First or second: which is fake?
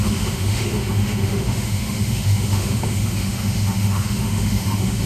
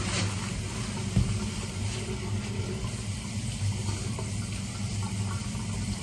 first